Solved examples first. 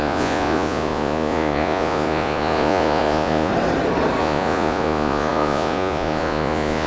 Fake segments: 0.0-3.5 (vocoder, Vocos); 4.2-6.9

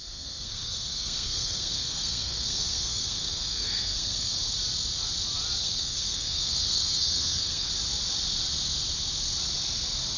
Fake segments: 0.0-4.4 (codec, SNAC); 5.6-7.7

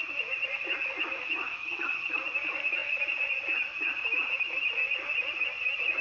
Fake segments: 1.6-2.1 (vocoder, HiFi-GAN)

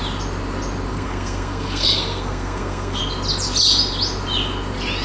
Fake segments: 0.9-3.0 (codec, SNAC)

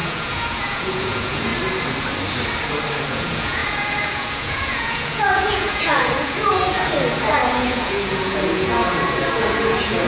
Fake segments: 0.0-1.5 (vocoder, Vocos); 3.1-10.1

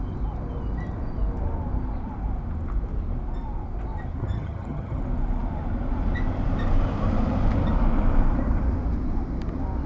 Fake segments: 4.2-5.0 (vocoder, HiFi-GAN)

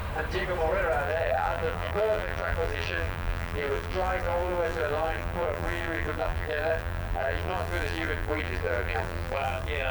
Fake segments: 1.0-9.9 (vocoder, BigVGAN v2)

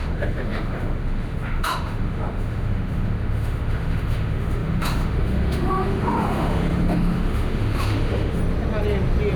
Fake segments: 0.0-8.4 (autoencoder, DAC-VAE)